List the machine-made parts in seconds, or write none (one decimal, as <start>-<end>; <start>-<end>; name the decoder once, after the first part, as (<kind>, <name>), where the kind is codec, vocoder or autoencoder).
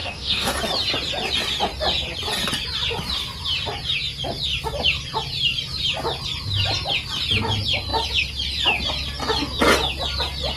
0.0-0.5 (codec, DAC)